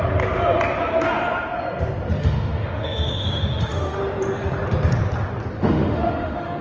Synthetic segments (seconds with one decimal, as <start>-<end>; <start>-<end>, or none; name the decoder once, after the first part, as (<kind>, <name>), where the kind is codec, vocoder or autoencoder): 2.2-4.0 (autoencoder, DAC-VAE); 5.6-6.6